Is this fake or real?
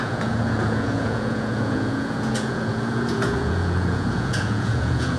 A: fake